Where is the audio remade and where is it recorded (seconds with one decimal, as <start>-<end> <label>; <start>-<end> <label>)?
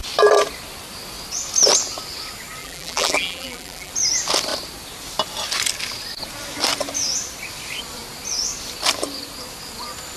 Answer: 0.0-2.6 recorded; 2.6-3.9 remade; 3.9-10.2 recorded